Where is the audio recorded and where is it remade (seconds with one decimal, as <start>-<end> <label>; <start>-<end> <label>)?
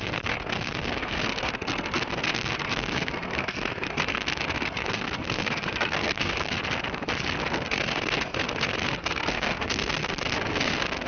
0.0-6.6 remade; 6.6-7.5 recorded; 7.5-11.1 remade